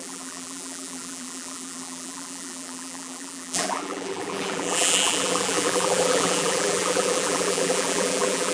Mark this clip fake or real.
fake